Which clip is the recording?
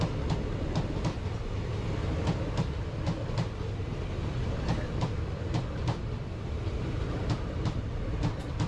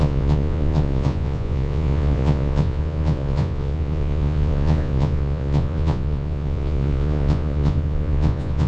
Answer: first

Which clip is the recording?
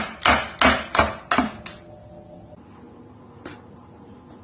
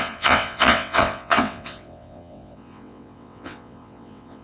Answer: first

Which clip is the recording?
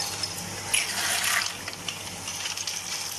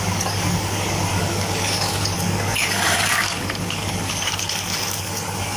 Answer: first